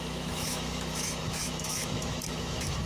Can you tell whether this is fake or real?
fake